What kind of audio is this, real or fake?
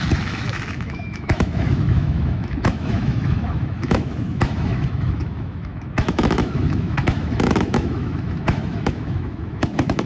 fake